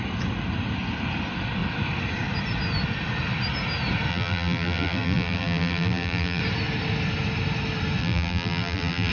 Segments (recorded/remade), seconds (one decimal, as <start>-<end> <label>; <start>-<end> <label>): 0.0-4.1 recorded; 4.1-6.4 remade; 6.4-8.0 recorded; 8.0-9.1 remade